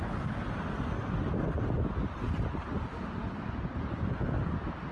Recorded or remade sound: recorded